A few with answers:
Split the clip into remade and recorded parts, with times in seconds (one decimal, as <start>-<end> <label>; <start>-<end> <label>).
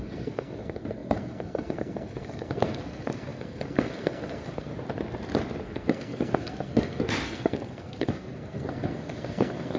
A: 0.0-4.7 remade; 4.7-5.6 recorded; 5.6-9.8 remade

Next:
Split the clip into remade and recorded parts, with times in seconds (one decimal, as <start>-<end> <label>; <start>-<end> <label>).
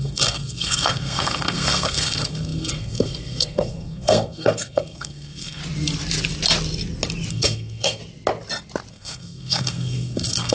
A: 0.0-5.6 remade; 5.6-7.3 recorded; 7.3-8.0 remade; 8.0-8.9 recorded; 8.9-10.5 remade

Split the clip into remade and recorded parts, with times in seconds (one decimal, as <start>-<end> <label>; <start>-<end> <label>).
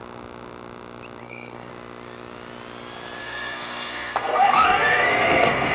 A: 0.0-1.2 recorded; 1.2-1.7 remade; 1.7-3.2 recorded; 3.2-5.7 remade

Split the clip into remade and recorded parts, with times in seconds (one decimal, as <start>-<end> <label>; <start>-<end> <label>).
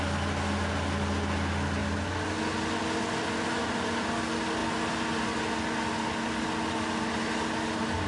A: 0.0-8.1 recorded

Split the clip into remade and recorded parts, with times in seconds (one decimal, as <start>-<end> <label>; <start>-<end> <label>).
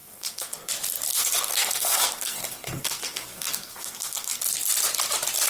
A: 0.0-0.7 remade; 0.7-1.1 recorded; 1.1-4.4 remade; 4.4-5.5 recorded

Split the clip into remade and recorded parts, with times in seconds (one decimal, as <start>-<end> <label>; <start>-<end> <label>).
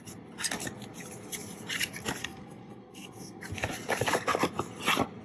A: 0.0-2.2 recorded; 2.2-3.4 remade; 3.4-5.2 recorded